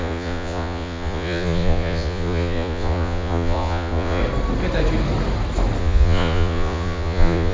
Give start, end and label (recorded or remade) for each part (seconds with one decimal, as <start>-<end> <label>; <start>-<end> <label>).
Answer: 0.0-4.2 remade; 4.2-5.8 recorded; 5.8-7.5 remade